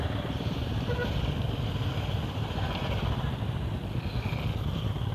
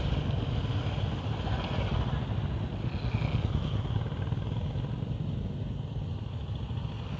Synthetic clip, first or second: first